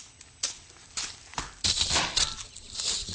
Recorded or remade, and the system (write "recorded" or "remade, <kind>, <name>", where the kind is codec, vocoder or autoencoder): recorded